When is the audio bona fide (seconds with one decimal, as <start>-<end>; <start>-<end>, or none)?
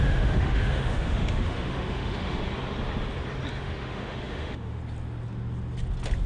2.4-3.6; 4.8-6.3